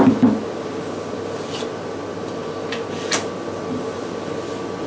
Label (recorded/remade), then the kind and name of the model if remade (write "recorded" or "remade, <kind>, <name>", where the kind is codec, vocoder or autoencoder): recorded